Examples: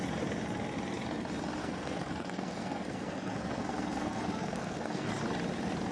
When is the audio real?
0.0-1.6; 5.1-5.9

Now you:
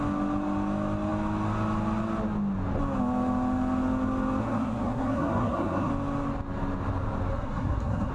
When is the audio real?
0.0-4.4; 5.9-7.3

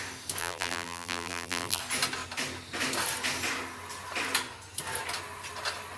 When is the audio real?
0.0-0.4; 1.8-6.0